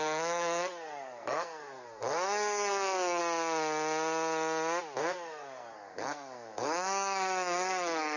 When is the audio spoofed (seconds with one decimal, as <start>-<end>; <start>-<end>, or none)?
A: 0.0-3.2; 5.0-8.2